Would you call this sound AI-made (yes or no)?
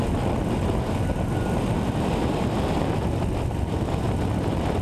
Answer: no